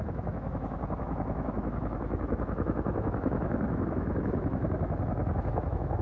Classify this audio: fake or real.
fake